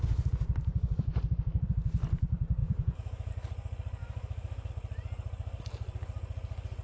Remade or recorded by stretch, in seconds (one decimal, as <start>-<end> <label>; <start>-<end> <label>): 0.0-2.6 recorded; 2.6-3.3 remade; 3.3-4.0 recorded; 4.0-4.7 remade; 4.7-6.8 recorded